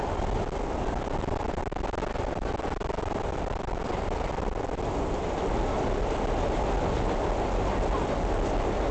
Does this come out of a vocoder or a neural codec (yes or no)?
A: no